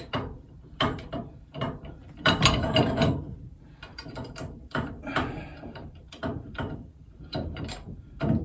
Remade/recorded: remade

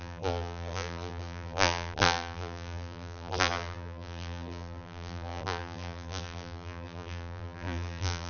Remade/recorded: remade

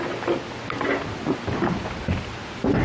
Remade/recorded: recorded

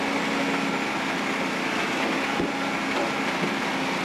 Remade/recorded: recorded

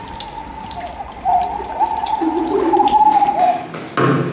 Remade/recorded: recorded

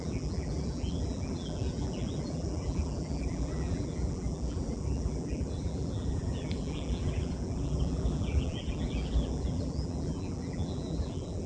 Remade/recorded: remade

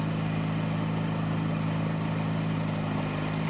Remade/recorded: recorded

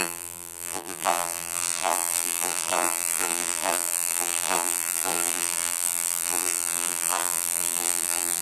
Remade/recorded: remade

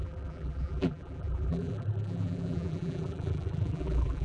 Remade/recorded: remade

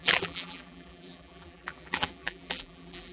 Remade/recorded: remade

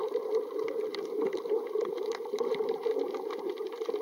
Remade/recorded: remade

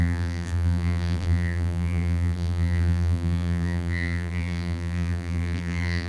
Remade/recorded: remade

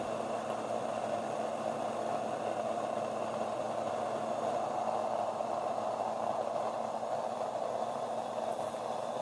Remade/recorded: recorded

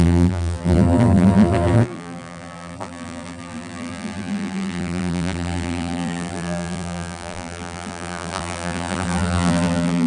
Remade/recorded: remade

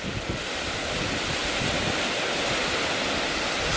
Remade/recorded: recorded